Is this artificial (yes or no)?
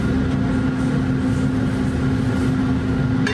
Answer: no